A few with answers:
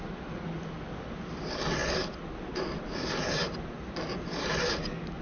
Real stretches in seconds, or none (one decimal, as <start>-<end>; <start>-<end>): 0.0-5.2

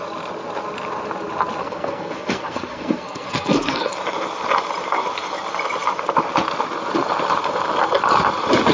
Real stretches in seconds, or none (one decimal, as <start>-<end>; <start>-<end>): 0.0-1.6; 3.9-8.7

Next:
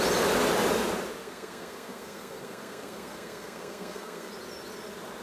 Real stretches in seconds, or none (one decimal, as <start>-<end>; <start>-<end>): 0.0-1.2; 4.3-5.2

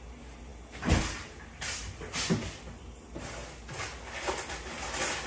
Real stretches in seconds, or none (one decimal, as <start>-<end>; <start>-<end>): 0.0-5.3